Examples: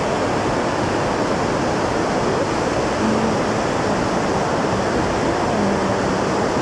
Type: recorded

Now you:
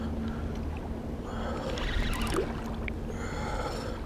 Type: recorded